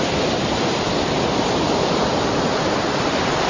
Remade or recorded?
remade